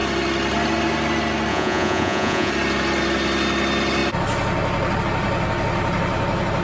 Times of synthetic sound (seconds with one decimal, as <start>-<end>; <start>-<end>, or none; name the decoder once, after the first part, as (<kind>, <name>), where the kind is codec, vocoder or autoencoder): 1.5-2.5 (vocoder, Vocos)